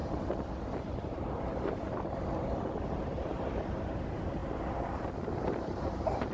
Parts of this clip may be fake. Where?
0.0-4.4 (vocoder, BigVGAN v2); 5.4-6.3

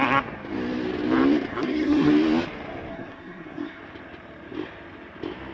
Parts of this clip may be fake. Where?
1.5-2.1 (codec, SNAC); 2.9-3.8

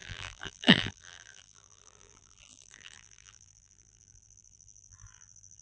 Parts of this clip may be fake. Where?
0.0-5.6 (vocoder, BigVGAN v2)